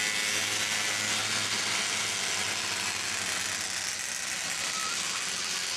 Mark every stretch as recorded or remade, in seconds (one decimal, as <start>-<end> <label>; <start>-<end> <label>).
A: 0.0-5.8 recorded